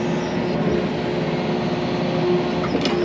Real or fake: real